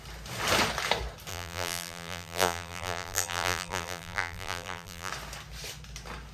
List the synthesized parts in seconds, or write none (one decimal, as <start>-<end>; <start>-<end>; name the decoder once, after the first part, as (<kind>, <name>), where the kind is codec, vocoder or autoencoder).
1.3-5.1 (vocoder, BigVGAN v2)